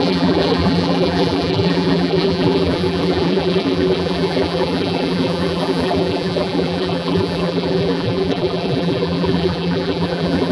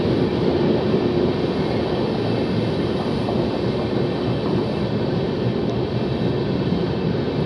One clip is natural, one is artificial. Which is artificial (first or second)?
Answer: first